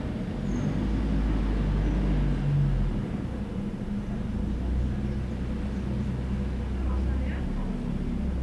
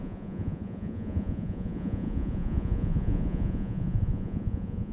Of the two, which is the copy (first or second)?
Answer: second